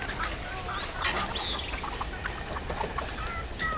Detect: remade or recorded recorded